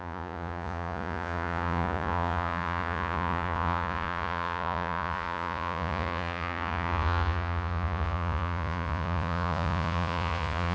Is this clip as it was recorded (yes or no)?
no